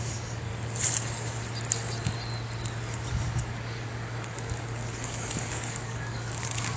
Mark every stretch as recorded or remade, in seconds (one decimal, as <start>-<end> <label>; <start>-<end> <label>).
0.0-0.5 remade; 0.5-3.1 recorded; 3.1-6.8 remade